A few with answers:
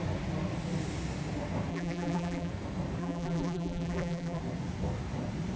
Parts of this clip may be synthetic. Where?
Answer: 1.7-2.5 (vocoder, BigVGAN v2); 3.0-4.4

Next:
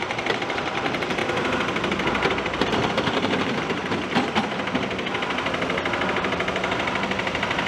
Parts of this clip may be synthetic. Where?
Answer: 0.0-1.2 (vocoder, BigVGAN v2); 2.6-3.8; 6.1-7.7